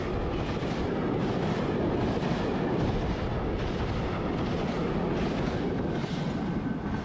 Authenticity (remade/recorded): recorded